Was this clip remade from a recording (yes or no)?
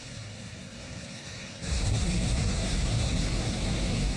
yes